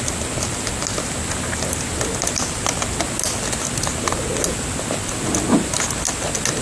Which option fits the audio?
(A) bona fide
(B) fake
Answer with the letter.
A